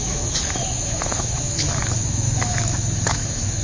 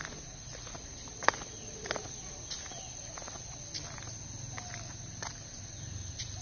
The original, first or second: second